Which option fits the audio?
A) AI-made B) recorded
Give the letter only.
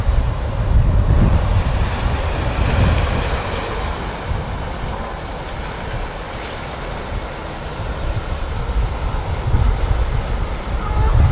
B